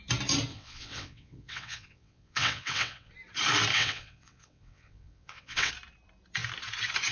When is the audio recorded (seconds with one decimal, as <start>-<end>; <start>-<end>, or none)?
0.0-0.5; 3.1-3.7; 5.7-7.1